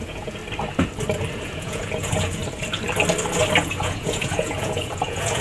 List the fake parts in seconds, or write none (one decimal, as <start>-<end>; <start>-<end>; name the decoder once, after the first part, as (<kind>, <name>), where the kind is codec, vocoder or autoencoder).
0.0-0.4 (vocoder, Vocos); 1.3-2.4; 3.6-5.4